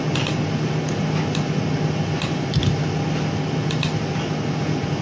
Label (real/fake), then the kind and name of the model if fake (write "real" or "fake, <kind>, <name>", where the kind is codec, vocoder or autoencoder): real